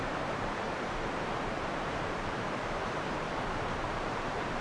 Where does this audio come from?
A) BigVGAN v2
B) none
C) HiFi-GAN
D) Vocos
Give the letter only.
A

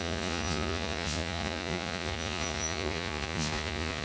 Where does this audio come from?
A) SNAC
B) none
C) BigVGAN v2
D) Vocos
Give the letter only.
D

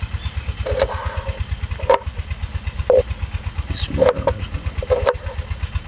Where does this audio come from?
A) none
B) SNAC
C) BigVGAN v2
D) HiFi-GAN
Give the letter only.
A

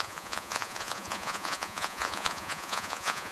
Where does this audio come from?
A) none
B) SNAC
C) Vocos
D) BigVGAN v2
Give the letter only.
C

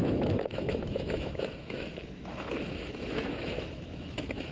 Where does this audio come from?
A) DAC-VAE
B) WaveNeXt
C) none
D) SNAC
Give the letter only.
A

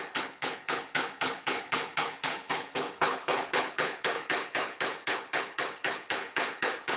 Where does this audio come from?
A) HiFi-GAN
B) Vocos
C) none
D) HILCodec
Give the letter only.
D